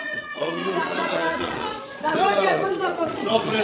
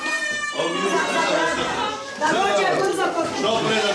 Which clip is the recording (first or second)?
second